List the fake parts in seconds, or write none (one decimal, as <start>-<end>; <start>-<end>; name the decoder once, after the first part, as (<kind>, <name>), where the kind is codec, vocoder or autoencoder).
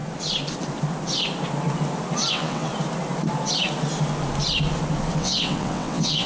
2.3-2.7 (vocoder, WaveNeXt); 5.1-6.3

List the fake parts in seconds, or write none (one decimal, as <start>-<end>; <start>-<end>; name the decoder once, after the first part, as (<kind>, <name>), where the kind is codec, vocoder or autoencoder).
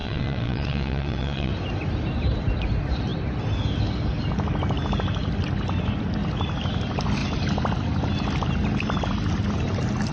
0.0-1.5 (vocoder, WaveNeXt)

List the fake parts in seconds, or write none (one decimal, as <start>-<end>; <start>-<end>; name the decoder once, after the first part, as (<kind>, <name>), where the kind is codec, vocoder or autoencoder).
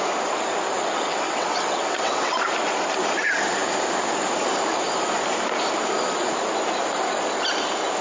1.1-2.4 (vocoder, WaveNeXt)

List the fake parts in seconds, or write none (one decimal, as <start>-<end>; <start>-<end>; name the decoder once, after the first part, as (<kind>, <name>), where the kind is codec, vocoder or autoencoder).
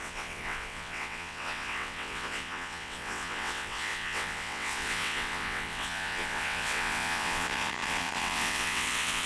0.0-9.3 (vocoder, WaveNeXt)